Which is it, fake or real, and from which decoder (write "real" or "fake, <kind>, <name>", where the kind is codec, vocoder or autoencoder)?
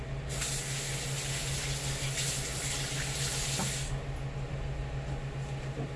real